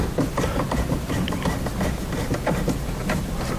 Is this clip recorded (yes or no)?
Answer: yes